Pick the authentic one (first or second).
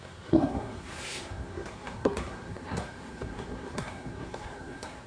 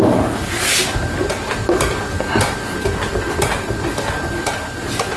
second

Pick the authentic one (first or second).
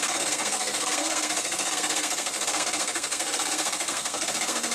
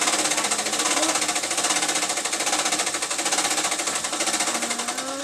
second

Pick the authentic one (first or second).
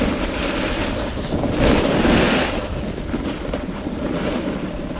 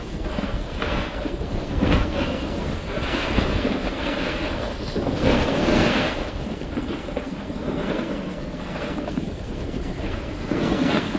first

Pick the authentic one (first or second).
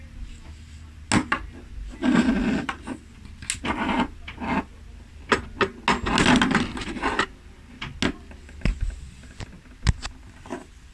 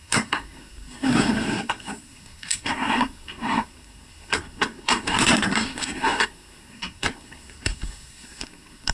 first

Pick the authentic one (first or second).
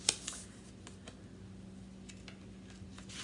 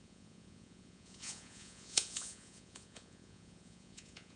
first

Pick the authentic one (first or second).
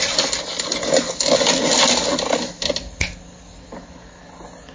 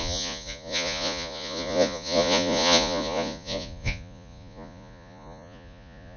first